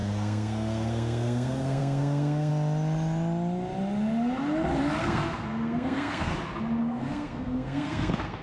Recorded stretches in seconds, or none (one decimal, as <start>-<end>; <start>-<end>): 2.5-5.0; 6.3-6.8